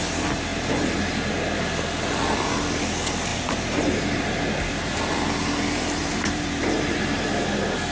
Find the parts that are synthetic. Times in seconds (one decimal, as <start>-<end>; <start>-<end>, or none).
3.3-5.0; 6.0-7.3

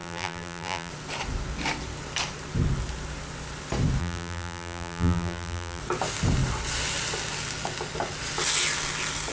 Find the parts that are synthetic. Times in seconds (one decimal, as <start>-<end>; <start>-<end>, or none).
0.0-0.9; 4.0-5.8

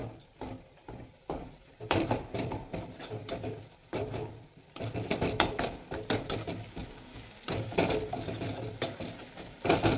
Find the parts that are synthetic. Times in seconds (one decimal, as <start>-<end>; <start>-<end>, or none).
0.0-6.8; 8.0-8.5; 9.2-10.0

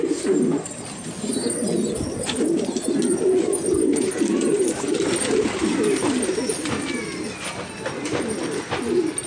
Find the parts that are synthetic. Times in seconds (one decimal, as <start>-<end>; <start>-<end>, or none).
none

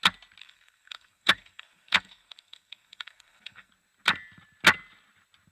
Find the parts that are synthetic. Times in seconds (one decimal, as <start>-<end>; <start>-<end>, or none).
0.4-3.7

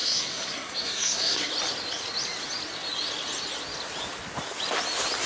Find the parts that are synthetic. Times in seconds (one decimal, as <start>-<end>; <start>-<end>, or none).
0.0-1.5

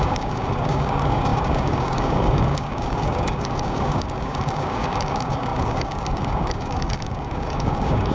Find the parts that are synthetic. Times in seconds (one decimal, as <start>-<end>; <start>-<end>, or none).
0.0-8.1

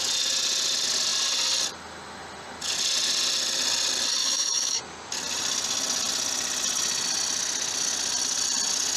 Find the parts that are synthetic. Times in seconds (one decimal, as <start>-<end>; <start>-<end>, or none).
4.2-4.8